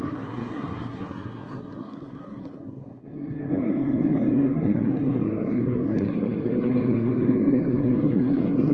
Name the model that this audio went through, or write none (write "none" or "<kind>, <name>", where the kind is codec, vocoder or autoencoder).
codec, SNAC